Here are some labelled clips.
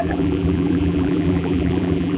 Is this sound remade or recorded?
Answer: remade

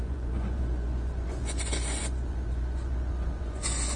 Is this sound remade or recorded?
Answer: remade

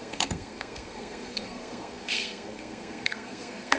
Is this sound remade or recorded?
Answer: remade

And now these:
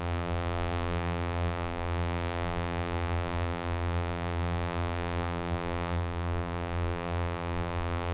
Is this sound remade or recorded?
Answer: remade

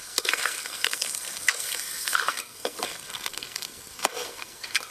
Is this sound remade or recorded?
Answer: remade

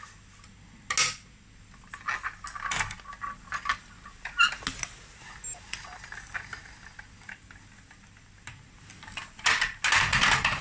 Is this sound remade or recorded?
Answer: recorded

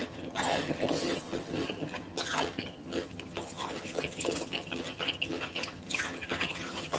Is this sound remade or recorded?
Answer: remade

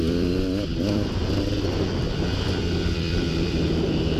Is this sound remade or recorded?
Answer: remade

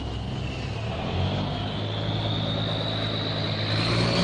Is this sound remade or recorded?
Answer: recorded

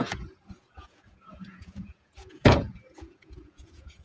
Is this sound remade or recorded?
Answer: remade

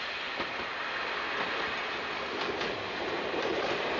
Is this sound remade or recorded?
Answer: recorded